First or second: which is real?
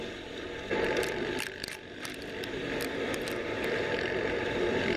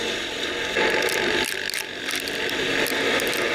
second